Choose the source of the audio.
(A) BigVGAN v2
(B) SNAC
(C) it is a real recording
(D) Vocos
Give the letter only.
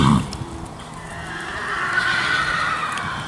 A